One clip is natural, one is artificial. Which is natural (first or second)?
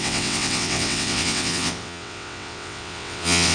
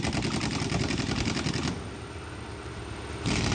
second